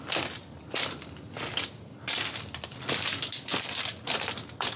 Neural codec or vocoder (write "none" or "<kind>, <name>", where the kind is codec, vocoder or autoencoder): none